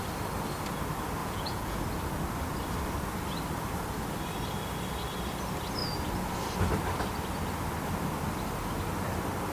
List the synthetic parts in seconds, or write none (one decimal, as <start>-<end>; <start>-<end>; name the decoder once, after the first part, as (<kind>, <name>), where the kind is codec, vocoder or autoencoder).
1.2-1.8 (vocoder, Vocos)